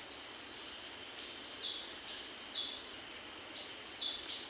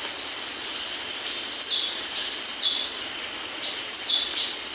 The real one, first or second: first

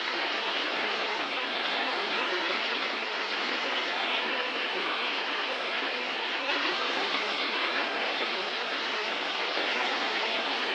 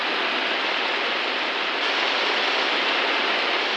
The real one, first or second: second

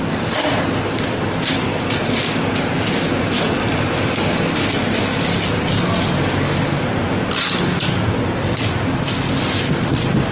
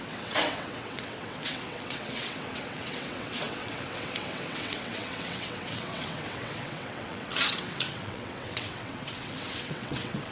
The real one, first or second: first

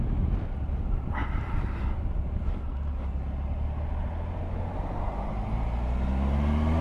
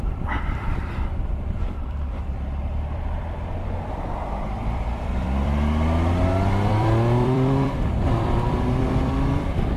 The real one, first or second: first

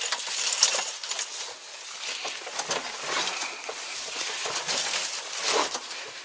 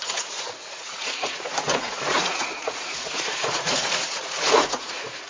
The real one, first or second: first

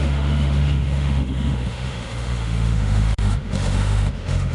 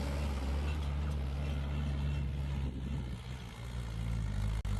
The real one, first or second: second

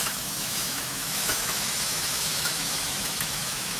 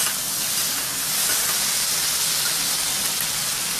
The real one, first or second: second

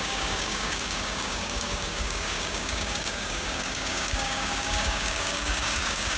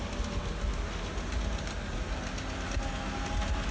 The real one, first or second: second